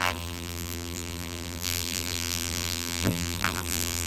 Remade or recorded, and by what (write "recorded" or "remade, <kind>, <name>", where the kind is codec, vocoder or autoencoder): remade, vocoder, BigVGAN v2